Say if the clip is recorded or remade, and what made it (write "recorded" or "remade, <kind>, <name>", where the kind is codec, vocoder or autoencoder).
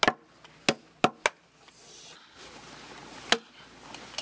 recorded